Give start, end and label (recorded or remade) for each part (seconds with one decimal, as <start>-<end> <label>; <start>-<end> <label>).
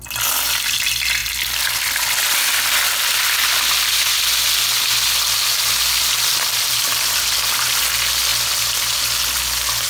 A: 0.0-9.9 recorded